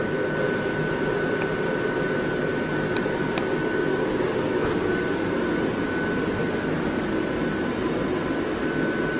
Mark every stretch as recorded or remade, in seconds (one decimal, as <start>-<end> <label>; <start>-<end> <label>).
0.0-3.9 recorded; 3.9-4.9 remade; 4.9-9.2 recorded